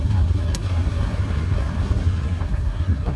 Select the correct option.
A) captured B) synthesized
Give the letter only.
B